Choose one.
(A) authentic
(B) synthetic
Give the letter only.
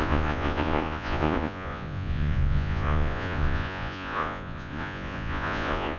B